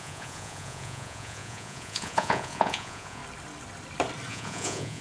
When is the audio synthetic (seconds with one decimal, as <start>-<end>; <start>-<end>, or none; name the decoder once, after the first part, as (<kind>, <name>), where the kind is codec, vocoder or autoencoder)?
0.0-3.2 (vocoder, Vocos); 4.3-5.0